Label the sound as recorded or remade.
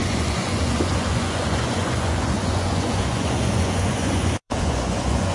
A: remade